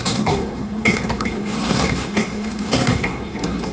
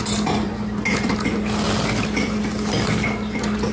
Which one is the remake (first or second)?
first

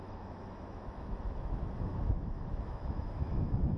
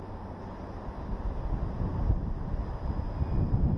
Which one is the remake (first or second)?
first